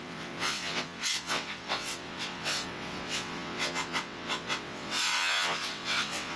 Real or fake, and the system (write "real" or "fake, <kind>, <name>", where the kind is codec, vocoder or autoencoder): fake, vocoder, WaveNeXt